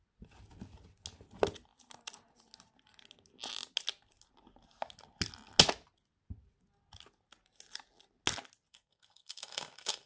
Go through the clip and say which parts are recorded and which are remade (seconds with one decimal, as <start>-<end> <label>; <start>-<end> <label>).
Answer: 0.0-8.7 recorded; 8.7-10.1 remade